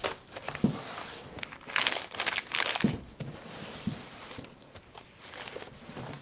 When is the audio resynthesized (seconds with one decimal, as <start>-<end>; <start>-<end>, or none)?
3.2-6.2